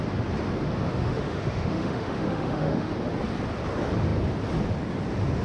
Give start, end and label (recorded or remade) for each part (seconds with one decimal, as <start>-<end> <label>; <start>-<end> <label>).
0.0-0.9 recorded; 0.9-2.9 remade; 2.9-5.4 recorded

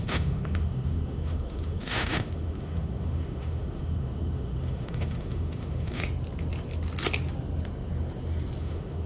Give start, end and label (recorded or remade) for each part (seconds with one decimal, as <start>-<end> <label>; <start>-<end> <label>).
0.0-6.0 remade; 6.0-8.6 recorded; 8.6-9.1 remade

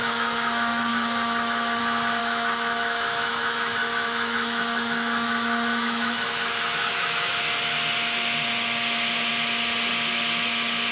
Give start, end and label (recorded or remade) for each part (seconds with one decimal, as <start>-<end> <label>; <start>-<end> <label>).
0.0-1.8 remade; 1.8-2.2 recorded; 2.2-7.4 remade; 7.4-10.9 recorded

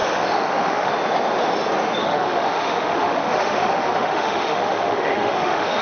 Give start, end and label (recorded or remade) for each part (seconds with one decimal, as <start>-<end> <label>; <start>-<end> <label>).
0.0-0.9 remade; 0.9-2.0 recorded; 2.0-5.8 remade

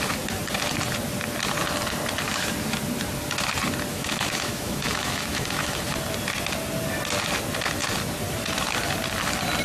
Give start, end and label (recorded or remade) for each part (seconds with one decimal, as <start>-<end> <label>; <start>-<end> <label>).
0.0-3.9 recorded; 3.9-5.8 remade; 5.8-9.6 recorded

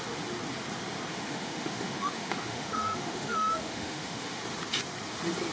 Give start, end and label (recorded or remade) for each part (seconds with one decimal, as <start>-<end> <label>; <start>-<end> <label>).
0.0-1.1 recorded; 1.1-4.4 remade; 4.4-5.5 recorded